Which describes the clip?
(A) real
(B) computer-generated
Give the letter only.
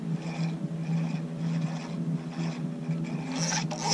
A